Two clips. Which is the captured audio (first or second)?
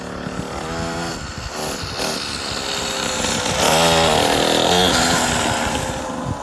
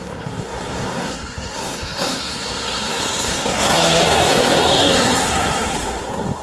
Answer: first